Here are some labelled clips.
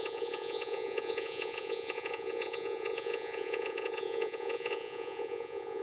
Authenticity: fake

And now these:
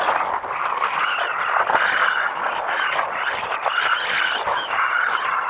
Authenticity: real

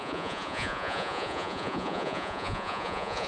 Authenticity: fake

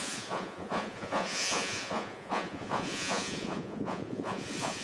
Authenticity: fake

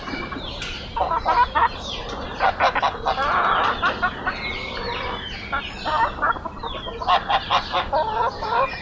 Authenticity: real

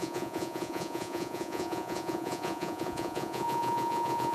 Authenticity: fake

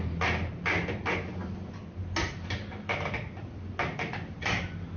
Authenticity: real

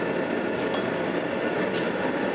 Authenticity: real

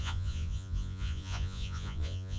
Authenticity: fake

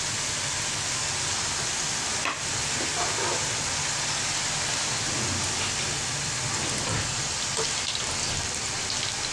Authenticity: real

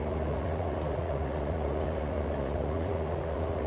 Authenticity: fake